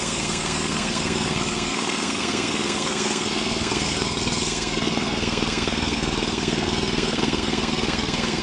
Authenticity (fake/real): fake